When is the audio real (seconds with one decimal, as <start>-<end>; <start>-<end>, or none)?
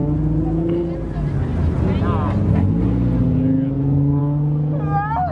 0.0-5.3